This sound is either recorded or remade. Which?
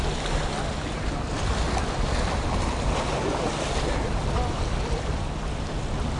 recorded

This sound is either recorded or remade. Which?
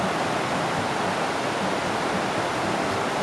recorded